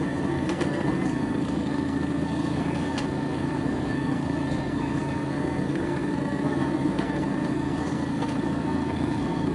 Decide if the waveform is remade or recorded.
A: remade